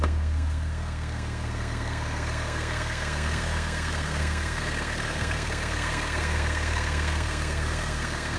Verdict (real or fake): fake